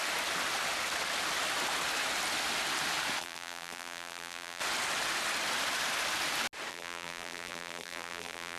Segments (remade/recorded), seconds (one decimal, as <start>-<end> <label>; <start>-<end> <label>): 0.0-3.2 recorded; 3.2-4.6 remade; 4.6-6.7 recorded; 6.7-8.6 remade